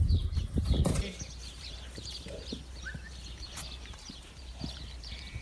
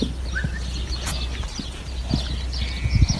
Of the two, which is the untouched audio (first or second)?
second